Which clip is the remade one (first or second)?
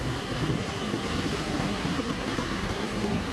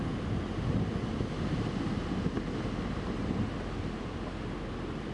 first